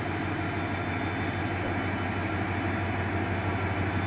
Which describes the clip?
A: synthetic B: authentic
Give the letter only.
B